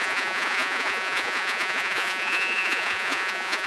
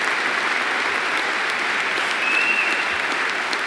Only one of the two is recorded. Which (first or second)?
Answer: second